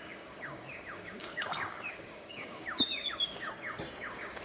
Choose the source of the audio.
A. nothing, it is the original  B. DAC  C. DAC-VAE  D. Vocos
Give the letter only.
B